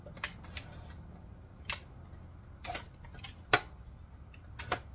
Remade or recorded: recorded